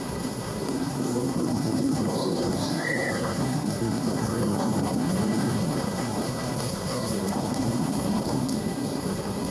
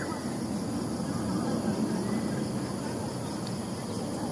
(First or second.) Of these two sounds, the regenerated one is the first